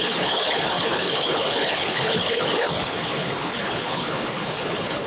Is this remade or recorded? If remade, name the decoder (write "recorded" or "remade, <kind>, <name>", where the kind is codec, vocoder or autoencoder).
remade, codec, HILCodec